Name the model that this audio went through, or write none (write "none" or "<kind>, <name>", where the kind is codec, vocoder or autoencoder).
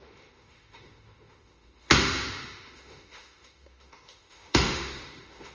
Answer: autoencoder, DAC-VAE